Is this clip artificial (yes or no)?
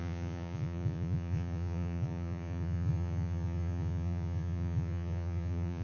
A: yes